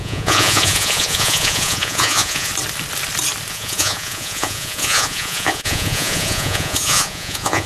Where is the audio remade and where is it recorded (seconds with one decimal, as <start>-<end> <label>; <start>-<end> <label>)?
0.0-2.5 remade; 2.5-3.5 recorded; 3.5-7.7 remade